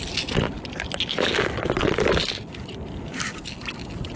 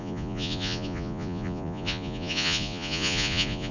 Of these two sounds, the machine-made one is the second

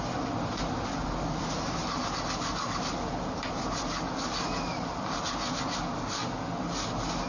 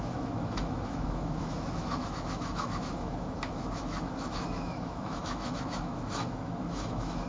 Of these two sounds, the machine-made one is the second